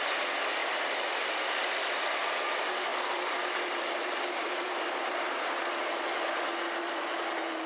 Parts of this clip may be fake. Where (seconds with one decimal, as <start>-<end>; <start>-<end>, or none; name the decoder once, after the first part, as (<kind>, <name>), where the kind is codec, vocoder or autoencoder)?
2.9-5.0 (vocoder, BigVGAN v2)